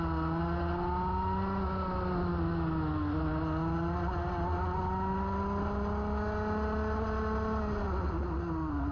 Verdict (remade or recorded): recorded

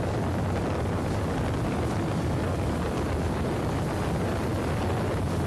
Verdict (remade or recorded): recorded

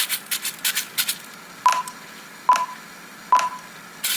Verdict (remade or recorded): recorded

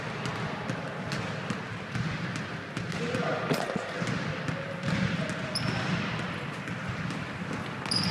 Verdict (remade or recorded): recorded